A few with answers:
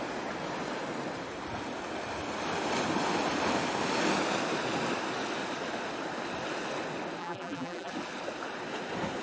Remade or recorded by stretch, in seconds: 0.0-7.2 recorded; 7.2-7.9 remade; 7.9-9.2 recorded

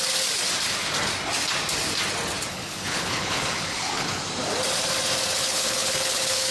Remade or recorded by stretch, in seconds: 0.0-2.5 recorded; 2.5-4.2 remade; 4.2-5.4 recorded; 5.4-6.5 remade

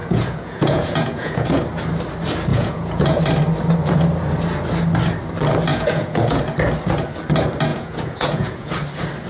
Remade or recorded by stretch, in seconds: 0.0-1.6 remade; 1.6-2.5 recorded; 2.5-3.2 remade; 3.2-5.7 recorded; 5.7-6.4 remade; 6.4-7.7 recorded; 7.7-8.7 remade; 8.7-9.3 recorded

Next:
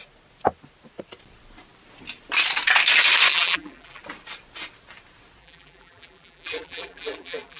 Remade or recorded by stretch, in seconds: 0.0-3.3 recorded; 3.3-4.0 remade; 4.0-5.4 recorded; 5.4-7.6 remade

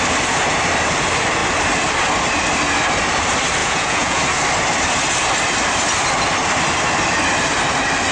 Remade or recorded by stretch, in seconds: 0.0-3.6 recorded; 3.6-4.2 remade; 4.2-8.1 recorded

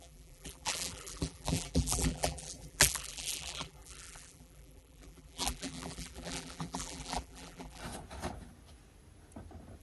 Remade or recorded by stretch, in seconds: 0.0-7.8 remade; 7.8-9.8 recorded

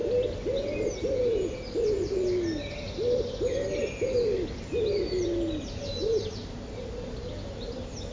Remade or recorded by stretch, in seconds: 0.0-8.1 recorded